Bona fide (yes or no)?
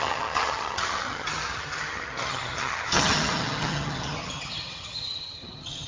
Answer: no